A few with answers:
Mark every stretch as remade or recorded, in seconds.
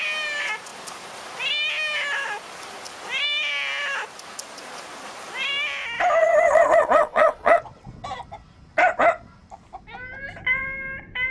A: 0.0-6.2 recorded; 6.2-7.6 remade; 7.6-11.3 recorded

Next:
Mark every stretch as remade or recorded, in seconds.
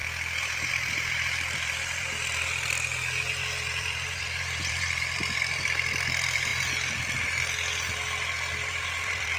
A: 0.0-0.7 recorded; 0.7-6.5 remade; 6.5-8.5 recorded; 8.5-9.4 remade